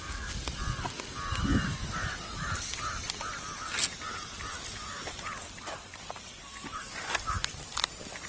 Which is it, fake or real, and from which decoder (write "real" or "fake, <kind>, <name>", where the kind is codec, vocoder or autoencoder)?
real